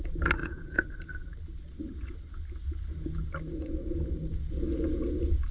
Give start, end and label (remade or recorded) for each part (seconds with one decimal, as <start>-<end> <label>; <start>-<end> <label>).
0.0-0.4 recorded; 0.4-0.9 remade; 0.9-5.5 recorded